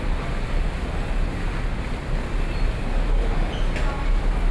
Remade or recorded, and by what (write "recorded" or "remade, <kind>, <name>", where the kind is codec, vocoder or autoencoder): recorded